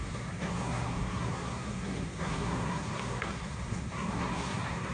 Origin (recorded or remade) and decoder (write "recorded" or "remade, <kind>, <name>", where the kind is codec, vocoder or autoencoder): remade, codec, SNAC